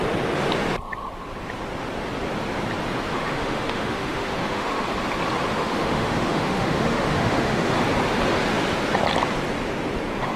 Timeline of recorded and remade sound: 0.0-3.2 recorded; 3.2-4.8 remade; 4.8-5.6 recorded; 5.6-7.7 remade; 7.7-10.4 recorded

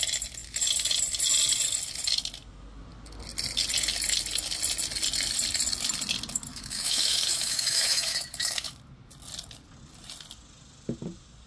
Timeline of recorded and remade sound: 0.0-6.5 recorded; 6.5-8.8 remade; 8.8-11.5 recorded

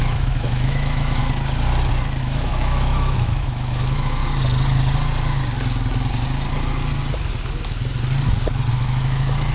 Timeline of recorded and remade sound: 0.0-1.2 remade; 1.2-2.2 recorded; 2.2-4.2 remade; 4.2-8.7 recorded; 8.7-9.5 remade